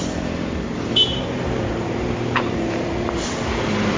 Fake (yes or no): yes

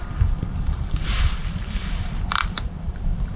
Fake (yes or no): yes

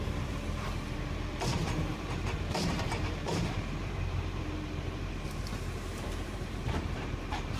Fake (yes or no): yes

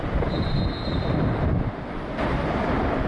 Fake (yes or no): no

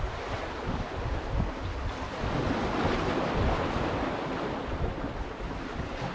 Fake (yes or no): no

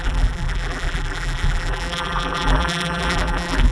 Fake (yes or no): yes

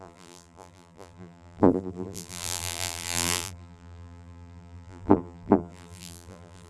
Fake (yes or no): yes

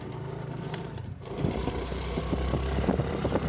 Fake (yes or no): yes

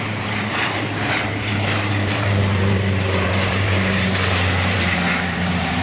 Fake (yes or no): yes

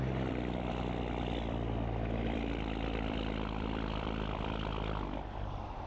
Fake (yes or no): yes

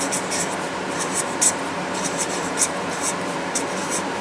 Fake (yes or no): yes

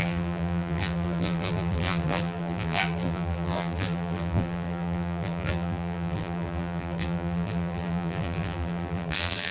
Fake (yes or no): yes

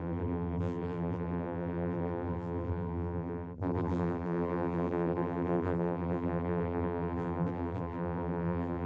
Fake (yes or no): yes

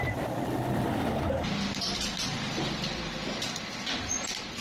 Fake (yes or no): no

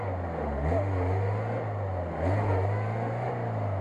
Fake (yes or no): no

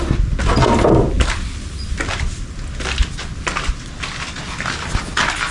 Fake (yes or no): no